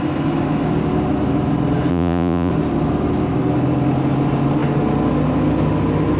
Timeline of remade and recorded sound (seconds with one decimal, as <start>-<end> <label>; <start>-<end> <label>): 0.0-1.9 recorded; 1.9-2.5 remade; 2.5-6.2 recorded